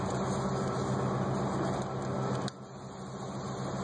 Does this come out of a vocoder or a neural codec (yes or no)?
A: no